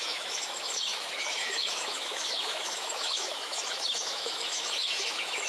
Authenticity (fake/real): fake